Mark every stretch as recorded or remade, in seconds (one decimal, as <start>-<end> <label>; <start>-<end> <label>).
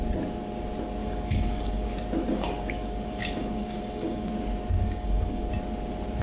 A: 0.0-1.0 recorded; 1.0-1.9 remade; 1.9-2.3 recorded; 2.3-4.3 remade; 4.3-4.8 recorded; 4.8-5.5 remade; 5.5-6.2 recorded